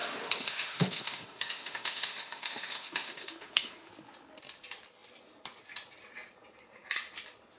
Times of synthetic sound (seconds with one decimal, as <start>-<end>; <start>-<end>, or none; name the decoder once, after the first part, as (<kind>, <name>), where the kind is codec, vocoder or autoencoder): 0.0-3.9 (autoencoder, DAC-VAE)